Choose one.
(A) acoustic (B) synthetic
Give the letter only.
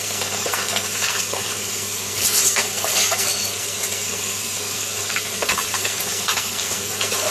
B